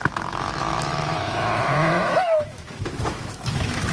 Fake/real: fake